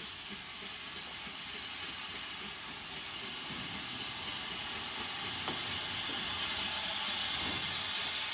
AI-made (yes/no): no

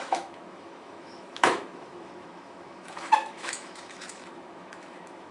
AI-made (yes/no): yes